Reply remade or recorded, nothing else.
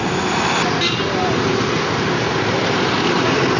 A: recorded